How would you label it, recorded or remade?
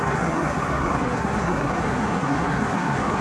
remade